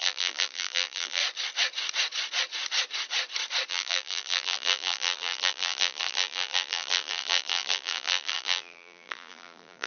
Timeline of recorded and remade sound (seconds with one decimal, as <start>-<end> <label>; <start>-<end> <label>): 0.0-1.2 remade; 1.2-3.7 recorded; 3.7-9.9 remade